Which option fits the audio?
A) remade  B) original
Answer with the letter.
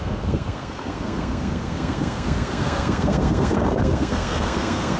A